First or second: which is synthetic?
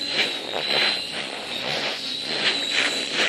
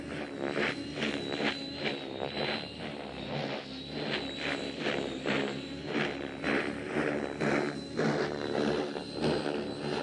first